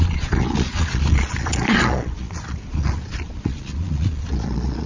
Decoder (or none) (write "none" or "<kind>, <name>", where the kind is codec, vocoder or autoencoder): vocoder, Vocos